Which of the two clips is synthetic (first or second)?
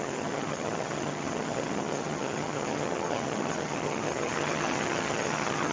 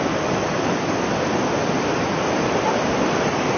first